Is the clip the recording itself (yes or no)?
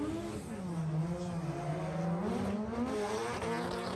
yes